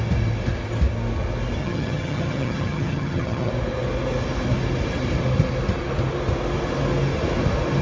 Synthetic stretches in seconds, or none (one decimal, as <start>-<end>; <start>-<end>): 1.6-3.5